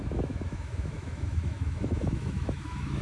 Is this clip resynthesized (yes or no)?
yes